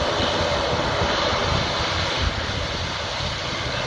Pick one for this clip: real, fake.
fake